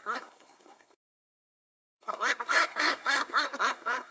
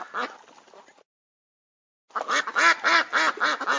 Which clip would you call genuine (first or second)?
second